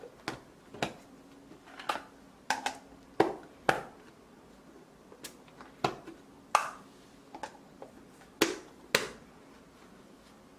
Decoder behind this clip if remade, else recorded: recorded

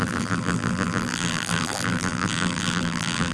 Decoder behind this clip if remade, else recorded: remade, vocoder, BigVGAN v2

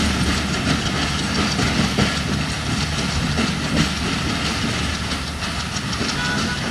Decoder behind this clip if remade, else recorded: recorded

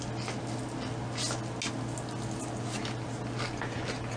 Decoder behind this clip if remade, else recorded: recorded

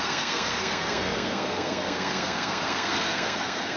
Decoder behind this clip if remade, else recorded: remade, codec, SNAC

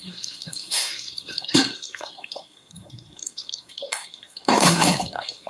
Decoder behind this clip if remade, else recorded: remade, codec, SNAC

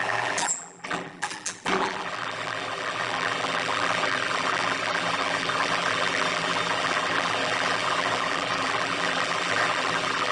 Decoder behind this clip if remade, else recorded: remade, vocoder, BigVGAN v2